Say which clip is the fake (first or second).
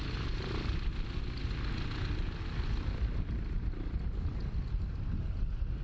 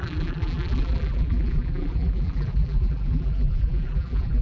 second